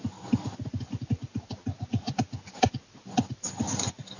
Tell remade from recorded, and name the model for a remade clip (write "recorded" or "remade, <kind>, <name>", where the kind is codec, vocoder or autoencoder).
recorded